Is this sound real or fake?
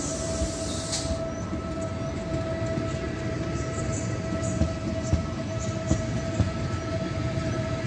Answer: real